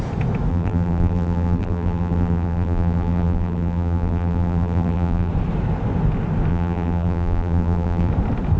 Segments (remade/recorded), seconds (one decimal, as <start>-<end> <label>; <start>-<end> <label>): 0.0-0.5 recorded; 0.5-5.3 remade; 5.3-6.5 recorded; 6.5-8.1 remade; 8.1-8.6 recorded